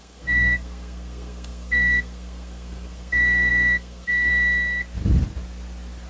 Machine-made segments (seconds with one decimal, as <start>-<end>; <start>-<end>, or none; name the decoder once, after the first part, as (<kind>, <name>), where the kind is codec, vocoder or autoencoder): 0.0-4.3 (codec, SNAC)